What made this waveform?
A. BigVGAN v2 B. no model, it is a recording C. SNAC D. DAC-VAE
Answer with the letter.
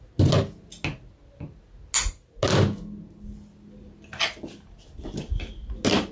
B